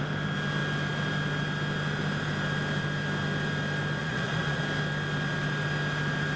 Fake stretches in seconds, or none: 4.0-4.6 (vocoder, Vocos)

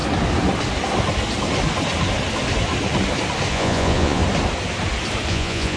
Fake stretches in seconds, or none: 3.5-4.2 (vocoder, Vocos); 5.3-5.8

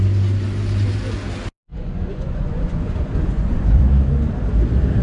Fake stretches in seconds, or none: 1.7-3.8 (vocoder, Vocos)

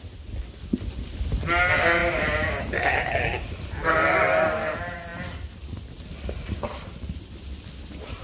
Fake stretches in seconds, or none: none

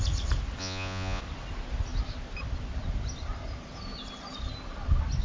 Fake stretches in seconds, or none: 0.6-1.2 (vocoder, Vocos)